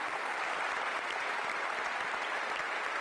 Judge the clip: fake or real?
real